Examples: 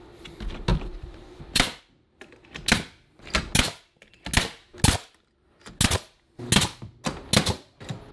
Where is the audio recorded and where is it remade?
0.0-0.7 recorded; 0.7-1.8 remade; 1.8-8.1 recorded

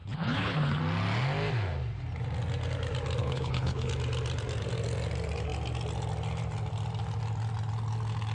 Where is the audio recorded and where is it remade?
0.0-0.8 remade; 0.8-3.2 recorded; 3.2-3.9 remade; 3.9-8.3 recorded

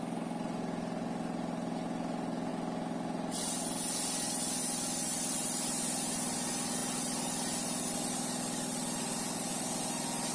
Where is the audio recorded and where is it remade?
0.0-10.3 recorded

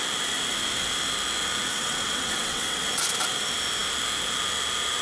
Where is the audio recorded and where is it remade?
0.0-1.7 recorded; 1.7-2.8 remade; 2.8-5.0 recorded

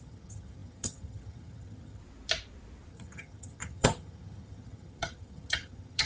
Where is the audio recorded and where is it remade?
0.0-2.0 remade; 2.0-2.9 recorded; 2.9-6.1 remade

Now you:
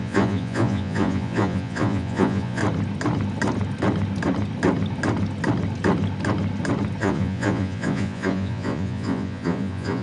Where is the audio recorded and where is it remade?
0.0-2.6 remade; 2.6-7.0 recorded; 7.0-10.0 remade

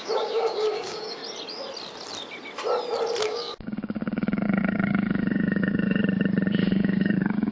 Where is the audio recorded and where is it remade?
0.0-1.2 remade; 1.2-3.2 recorded; 3.2-6.0 remade; 6.0-6.6 recorded; 6.6-7.5 remade

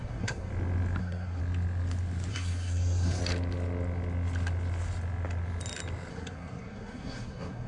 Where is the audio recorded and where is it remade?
0.0-0.5 remade; 0.5-1.0 recorded; 1.0-1.4 remade; 1.4-2.3 recorded; 2.3-3.2 remade; 3.2-6.1 recorded; 6.1-7.7 remade